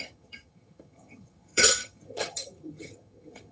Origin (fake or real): fake